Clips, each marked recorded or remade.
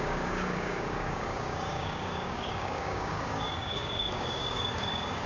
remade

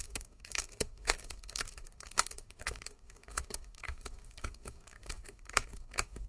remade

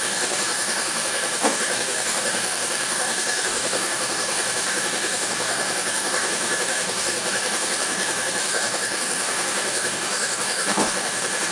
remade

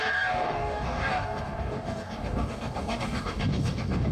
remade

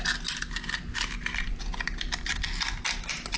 recorded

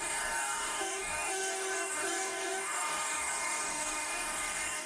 remade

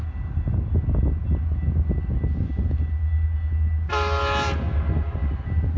recorded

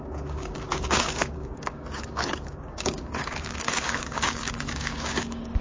remade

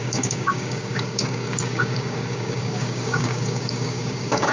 remade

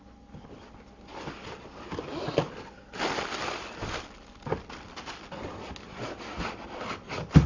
recorded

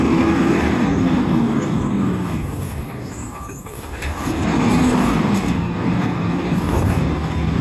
remade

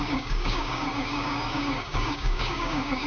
remade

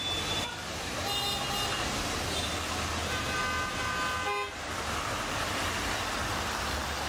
recorded